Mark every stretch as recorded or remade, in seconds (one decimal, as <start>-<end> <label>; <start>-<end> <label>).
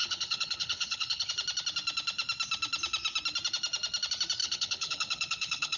0.0-1.3 remade; 1.3-4.4 recorded; 4.4-5.8 remade